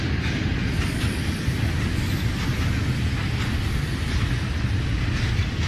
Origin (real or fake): real